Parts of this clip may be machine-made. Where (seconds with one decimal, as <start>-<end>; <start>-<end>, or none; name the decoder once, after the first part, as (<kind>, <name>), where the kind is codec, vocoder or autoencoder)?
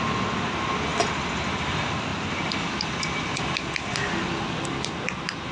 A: none